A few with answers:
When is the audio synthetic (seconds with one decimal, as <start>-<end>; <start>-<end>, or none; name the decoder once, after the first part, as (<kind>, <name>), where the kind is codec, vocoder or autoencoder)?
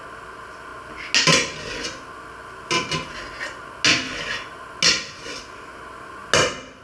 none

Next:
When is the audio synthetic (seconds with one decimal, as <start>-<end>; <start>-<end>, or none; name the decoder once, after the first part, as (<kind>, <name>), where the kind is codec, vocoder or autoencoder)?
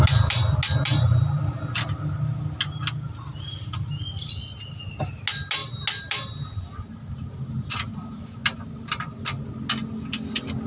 none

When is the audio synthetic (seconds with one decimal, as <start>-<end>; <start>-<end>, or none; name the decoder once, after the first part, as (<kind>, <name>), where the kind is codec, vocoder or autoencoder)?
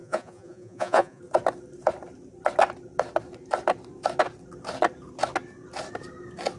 0.0-1.2 (vocoder, Vocos)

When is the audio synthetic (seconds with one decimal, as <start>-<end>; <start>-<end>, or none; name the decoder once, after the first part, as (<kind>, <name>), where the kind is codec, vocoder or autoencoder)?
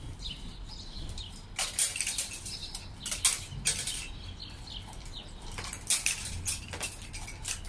none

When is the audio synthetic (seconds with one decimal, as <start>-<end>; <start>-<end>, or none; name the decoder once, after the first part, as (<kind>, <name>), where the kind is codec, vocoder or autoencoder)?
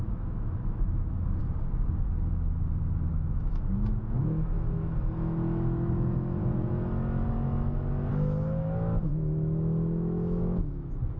0.0-1.4 (autoencoder, DAC-VAE); 3.1-6.4; 8.1-11.2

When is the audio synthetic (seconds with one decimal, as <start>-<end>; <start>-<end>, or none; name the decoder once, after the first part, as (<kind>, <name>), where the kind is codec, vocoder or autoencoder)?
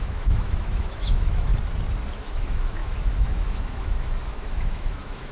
0.0-1.5 (autoencoder, DAC-VAE); 2.1-5.3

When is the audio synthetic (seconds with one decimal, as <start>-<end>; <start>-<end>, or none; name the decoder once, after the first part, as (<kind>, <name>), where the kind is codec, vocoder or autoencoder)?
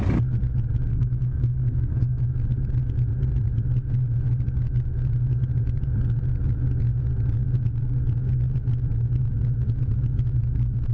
0.9-2.2 (codec, SNAC)